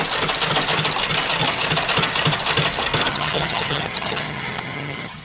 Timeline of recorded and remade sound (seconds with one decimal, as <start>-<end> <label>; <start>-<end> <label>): 0.0-3.1 recorded; 3.1-5.2 remade